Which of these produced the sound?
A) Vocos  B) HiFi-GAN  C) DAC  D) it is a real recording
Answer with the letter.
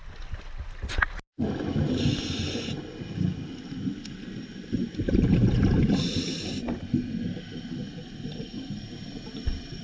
D